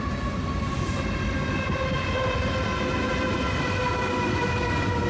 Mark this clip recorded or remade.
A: recorded